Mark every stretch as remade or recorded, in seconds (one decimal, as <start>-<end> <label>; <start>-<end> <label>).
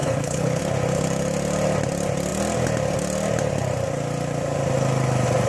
0.0-0.6 remade; 0.6-5.5 recorded